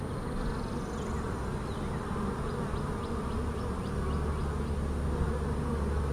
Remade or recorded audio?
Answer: recorded